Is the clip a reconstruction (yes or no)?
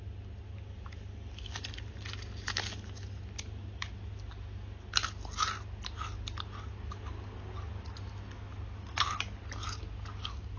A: no